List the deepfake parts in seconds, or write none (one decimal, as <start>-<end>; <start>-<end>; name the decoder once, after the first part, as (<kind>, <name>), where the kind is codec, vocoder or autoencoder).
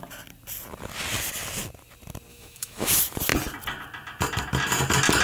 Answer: 2.3-2.9 (autoencoder, DAC-VAE)